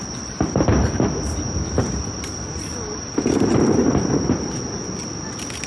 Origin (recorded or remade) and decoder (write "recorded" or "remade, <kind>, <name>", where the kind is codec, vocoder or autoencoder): recorded